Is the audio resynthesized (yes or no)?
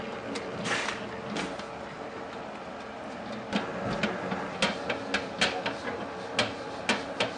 no